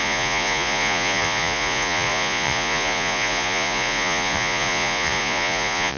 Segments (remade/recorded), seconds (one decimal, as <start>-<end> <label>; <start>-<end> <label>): 0.0-6.0 remade